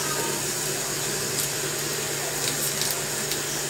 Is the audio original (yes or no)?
yes